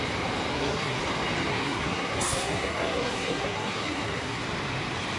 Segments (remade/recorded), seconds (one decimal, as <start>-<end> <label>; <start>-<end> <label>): 0.0-0.5 recorded; 0.5-1.0 remade; 1.0-1.5 recorded; 1.5-4.4 remade; 4.4-5.2 recorded